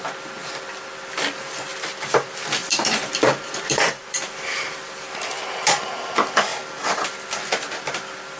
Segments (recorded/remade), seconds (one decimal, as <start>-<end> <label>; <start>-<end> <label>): 0.0-0.4 recorded; 0.4-1.6 remade; 1.6-2.6 recorded; 2.6-5.3 remade; 5.3-6.5 recorded; 6.5-8.4 remade